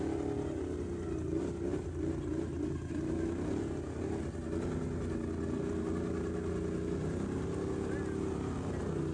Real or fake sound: real